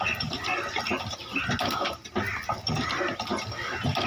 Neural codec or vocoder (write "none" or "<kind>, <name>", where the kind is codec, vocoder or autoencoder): none